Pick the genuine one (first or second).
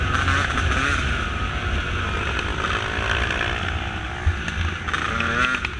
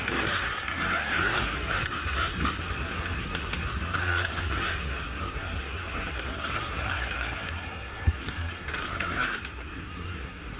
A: first